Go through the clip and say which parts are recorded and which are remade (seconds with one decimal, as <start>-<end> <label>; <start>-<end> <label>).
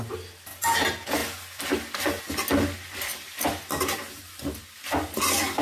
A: 0.0-3.1 recorded; 3.1-4.6 remade; 4.6-5.6 recorded